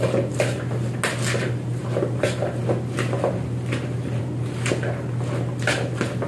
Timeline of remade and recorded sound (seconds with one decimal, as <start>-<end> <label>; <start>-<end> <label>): 0.0-6.3 recorded